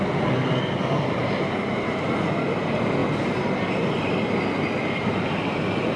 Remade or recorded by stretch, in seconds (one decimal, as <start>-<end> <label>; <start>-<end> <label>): 0.0-1.2 recorded; 1.2-2.1 remade; 2.1-5.1 recorded; 5.1-6.0 remade

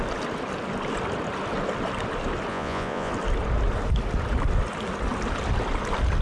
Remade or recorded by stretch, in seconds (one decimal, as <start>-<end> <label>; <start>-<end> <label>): 0.0-2.5 recorded; 2.5-3.1 remade; 3.1-6.2 recorded

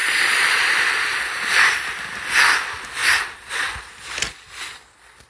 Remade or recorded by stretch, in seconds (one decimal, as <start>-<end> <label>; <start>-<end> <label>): 0.0-1.1 recorded; 1.1-1.9 remade; 1.9-3.0 recorded; 3.0-3.5 remade; 3.5-5.3 recorded

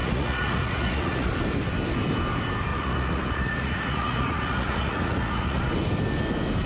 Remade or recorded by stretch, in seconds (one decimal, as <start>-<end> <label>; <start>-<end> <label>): 0.0-1.3 remade; 1.3-2.7 recorded; 2.7-5.6 remade; 5.6-6.7 recorded

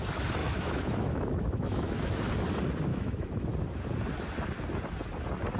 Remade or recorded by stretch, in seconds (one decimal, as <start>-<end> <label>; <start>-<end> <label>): 0.0-0.4 recorded; 0.4-2.3 remade; 2.3-2.9 recorded; 2.9-3.5 remade; 3.5-5.6 recorded